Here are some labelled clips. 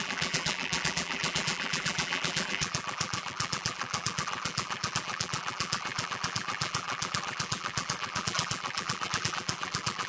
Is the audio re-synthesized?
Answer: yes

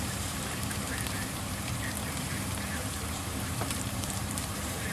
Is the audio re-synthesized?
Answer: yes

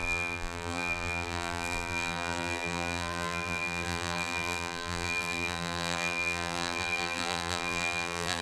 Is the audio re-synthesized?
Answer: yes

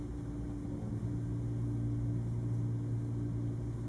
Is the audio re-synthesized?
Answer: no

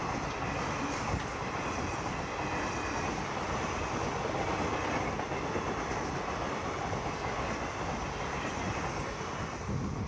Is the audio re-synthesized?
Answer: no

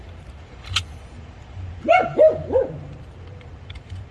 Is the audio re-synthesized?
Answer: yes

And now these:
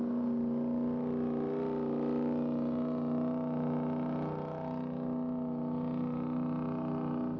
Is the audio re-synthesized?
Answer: no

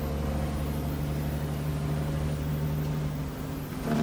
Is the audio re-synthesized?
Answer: no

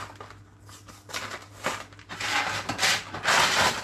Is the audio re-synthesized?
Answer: no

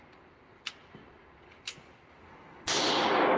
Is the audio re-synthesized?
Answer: no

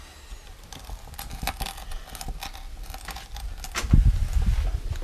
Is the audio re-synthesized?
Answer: no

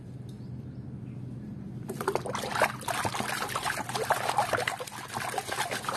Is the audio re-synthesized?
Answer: no